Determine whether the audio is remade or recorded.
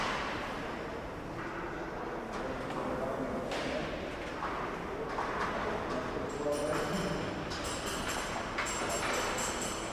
recorded